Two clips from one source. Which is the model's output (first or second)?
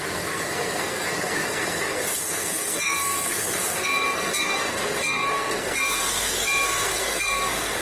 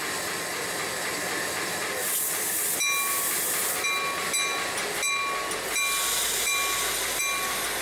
first